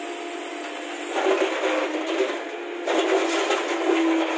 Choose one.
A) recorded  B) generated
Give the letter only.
A